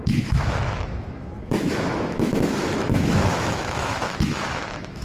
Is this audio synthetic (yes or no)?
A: yes